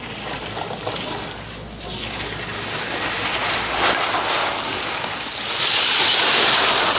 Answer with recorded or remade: recorded